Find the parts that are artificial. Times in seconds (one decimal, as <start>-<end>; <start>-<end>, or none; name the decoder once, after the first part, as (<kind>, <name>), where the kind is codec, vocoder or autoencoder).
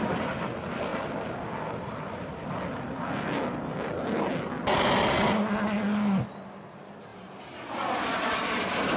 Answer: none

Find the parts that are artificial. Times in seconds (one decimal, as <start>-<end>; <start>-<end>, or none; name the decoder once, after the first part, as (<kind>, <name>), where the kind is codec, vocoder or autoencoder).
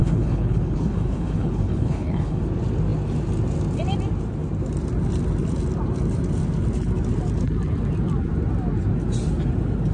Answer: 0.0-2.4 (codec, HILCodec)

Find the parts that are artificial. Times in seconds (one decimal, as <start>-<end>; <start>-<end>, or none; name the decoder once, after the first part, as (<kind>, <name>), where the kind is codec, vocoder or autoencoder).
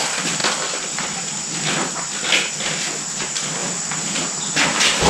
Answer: 0.4-2.5 (vocoder, BigVGAN v2)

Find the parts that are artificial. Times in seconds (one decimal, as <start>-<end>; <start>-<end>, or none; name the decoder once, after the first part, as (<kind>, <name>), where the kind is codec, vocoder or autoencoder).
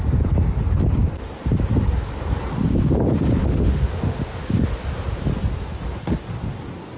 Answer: 3.4-4.4 (autoencoder, DAC-VAE)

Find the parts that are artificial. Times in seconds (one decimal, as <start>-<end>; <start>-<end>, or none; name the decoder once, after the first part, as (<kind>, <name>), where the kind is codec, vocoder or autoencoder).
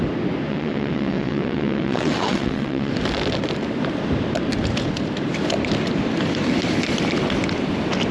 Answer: 0.5-2.9 (vocoder, WaveNeXt)